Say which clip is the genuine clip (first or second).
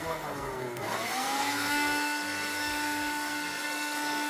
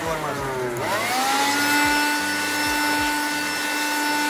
second